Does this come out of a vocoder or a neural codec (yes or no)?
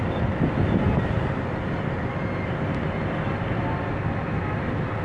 no